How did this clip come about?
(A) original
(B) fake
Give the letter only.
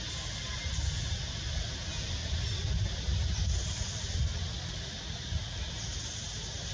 A